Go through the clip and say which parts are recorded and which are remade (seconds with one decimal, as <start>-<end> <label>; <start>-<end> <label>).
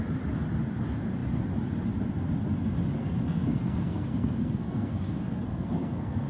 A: 0.0-3.0 recorded; 3.0-6.3 remade